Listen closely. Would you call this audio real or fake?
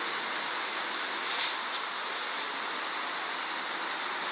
real